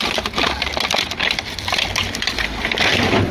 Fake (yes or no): yes